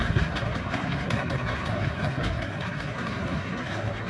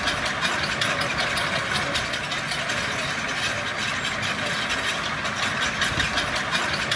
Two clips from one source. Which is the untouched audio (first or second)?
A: second